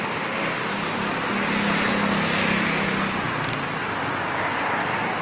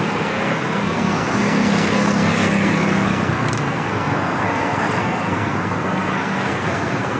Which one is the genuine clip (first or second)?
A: first